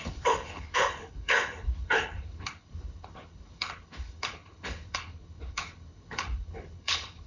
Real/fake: fake